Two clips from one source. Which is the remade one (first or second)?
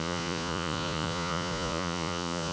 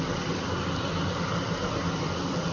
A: first